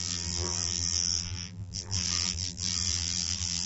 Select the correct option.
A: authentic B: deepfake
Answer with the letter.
B